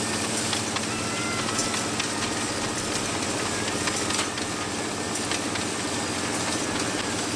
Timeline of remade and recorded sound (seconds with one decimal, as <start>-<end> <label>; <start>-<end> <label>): 0.0-7.4 recorded